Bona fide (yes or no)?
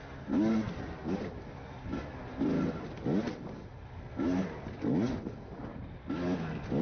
yes